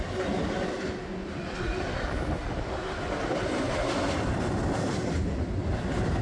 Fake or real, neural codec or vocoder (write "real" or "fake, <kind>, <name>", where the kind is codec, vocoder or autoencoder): real